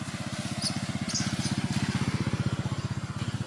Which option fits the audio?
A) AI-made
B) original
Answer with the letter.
B